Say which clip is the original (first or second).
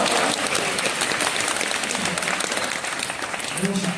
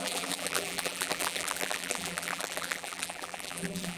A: first